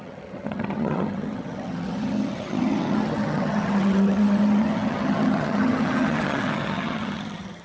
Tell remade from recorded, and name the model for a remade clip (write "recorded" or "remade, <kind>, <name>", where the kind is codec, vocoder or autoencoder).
remade, vocoder, HiFi-GAN